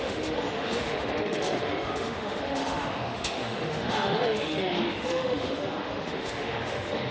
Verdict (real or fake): fake